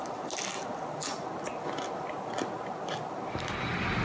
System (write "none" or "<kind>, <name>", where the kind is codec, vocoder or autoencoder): none